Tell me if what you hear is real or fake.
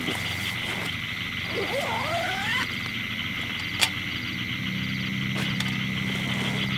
real